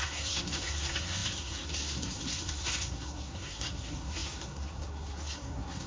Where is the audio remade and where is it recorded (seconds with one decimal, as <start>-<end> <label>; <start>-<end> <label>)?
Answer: 0.0-5.9 remade